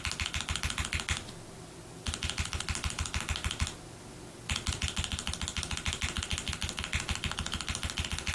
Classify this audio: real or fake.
real